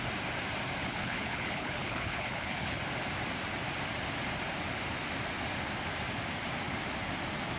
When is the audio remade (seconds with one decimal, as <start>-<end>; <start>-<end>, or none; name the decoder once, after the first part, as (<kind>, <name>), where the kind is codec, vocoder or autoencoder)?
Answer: 0.8-2.8 (codec, HILCodec)

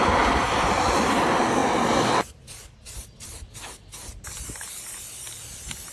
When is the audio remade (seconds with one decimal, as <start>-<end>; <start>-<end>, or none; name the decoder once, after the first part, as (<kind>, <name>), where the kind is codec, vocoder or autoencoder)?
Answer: 0.0-1.6 (vocoder, BigVGAN v2); 5.1-5.9